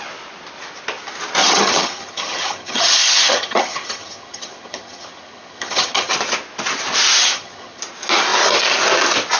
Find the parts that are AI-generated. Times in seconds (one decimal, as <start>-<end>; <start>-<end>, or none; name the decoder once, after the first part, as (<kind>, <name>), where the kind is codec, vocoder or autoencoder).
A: 1.4-6.1 (vocoder, HiFi-GAN); 7.2-7.8